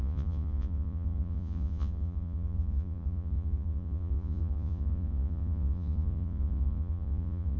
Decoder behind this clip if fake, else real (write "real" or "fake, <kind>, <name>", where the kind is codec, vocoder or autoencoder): fake, vocoder, Vocos